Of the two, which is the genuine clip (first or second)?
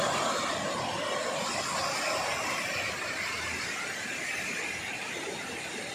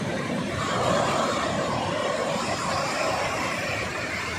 first